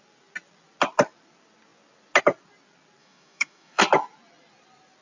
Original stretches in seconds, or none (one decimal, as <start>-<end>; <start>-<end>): 0.0-3.0; 3.8-5.0